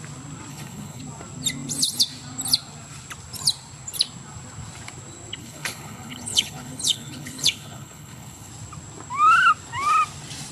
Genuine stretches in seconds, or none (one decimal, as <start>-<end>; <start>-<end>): 0.0-0.5; 1.0-5.4; 8.5-10.5